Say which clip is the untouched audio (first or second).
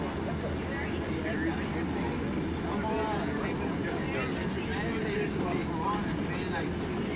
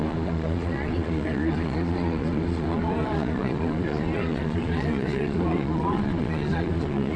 first